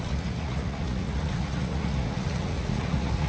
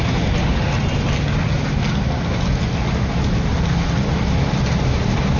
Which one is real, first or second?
second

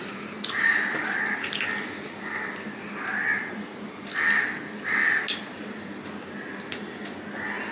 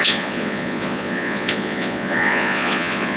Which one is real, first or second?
first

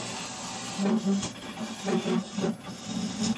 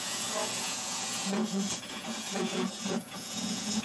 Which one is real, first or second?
first